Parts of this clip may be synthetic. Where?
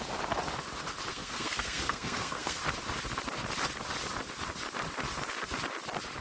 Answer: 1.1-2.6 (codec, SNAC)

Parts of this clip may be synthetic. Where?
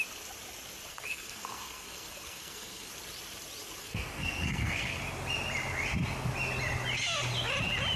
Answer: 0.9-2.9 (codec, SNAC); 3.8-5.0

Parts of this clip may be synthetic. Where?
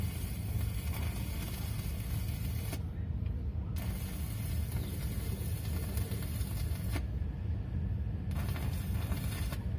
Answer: none